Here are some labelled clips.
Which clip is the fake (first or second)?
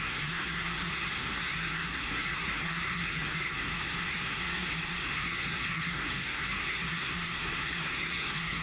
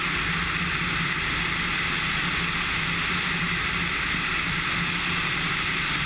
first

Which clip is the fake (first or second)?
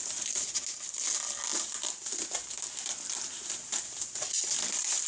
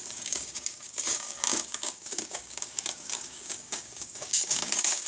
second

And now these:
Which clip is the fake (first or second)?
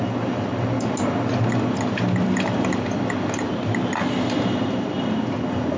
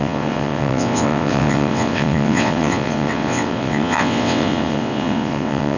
second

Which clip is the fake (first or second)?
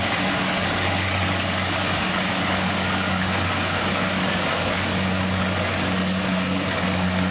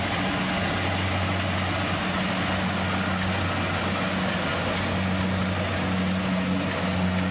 first